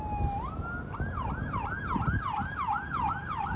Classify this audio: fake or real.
real